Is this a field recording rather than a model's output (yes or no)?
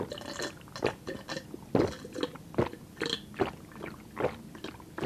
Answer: yes